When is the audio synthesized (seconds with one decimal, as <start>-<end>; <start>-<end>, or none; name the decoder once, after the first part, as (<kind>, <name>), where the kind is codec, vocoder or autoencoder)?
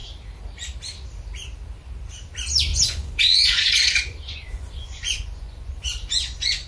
2.7-6.7 (vocoder, Vocos)